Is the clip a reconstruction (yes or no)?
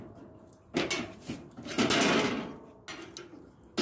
no